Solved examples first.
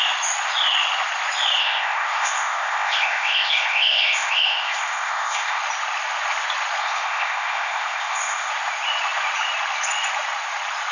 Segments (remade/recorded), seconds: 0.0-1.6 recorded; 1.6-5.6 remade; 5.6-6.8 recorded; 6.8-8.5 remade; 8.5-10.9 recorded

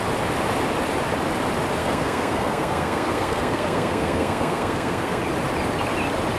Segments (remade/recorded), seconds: 0.0-1.8 recorded; 1.8-5.2 remade; 5.2-6.4 recorded

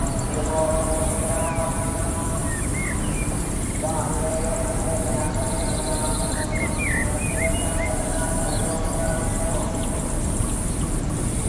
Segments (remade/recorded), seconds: 0.0-2.4 remade; 2.4-4.0 recorded; 4.0-11.5 remade

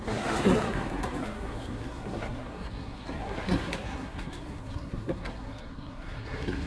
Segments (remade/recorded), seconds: 0.0-6.7 remade

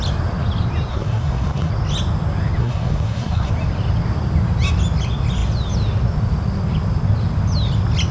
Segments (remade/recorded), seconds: 0.0-0.9 recorded; 0.9-1.7 remade; 1.7-2.6 recorded; 2.6-3.5 remade; 3.5-8.1 recorded

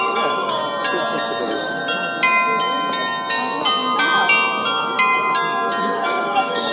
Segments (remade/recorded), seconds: 0.0-0.6 remade; 0.6-1.4 recorded; 1.4-1.8 remade; 1.8-5.8 recorded; 5.8-6.7 remade

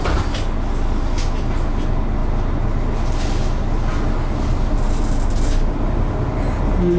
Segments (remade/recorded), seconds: 0.0-7.0 recorded

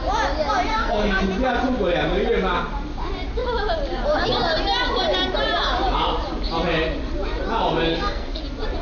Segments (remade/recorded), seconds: 0.0-0.7 recorded; 0.7-1.2 remade; 1.2-7.9 recorded; 7.9-8.4 remade; 8.4-8.8 recorded